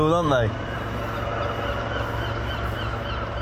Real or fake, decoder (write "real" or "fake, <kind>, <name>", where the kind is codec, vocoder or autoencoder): real